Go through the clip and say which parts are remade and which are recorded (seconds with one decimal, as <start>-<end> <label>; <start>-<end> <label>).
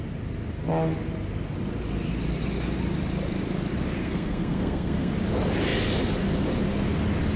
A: 0.0-4.0 recorded; 4.0-5.1 remade; 5.1-7.4 recorded